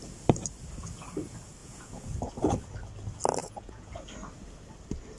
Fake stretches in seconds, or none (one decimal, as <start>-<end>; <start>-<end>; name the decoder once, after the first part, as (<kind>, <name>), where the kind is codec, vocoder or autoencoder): 1.6-2.2 (vocoder, Vocos); 3.4-3.9